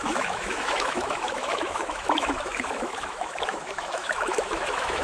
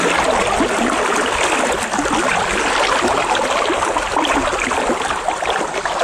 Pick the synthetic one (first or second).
first